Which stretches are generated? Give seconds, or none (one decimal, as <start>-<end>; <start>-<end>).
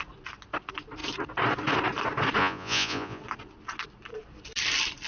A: 2.4-3.2